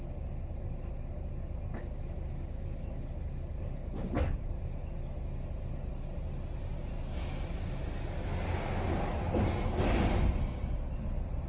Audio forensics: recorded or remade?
recorded